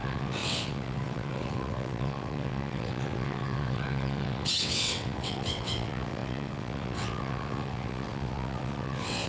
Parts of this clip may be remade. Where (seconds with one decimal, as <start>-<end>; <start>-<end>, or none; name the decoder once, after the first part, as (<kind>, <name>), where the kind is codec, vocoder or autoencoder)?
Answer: 0.0-9.3 (vocoder, WaveNeXt)